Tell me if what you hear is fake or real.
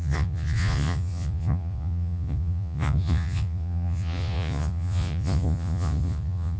fake